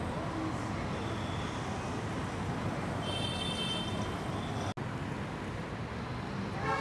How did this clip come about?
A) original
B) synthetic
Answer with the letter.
A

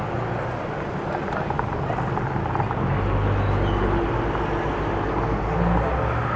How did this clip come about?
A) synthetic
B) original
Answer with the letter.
B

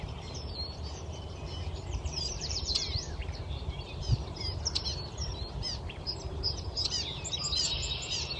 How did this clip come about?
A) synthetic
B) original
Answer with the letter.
A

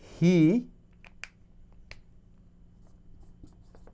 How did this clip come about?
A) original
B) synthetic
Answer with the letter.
A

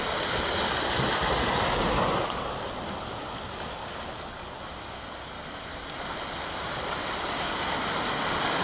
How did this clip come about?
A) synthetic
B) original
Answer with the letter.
B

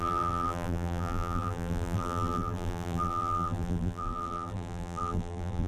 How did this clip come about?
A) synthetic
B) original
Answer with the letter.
A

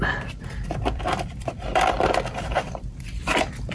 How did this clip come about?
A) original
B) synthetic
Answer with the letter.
B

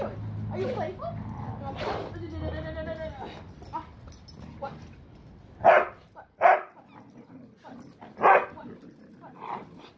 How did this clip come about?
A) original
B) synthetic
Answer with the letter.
A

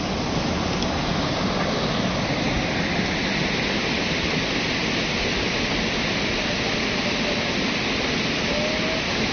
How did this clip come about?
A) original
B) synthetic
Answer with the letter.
A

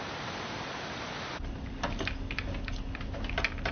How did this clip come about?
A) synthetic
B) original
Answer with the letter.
B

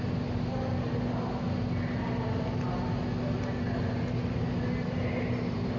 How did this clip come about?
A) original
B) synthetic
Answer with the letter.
A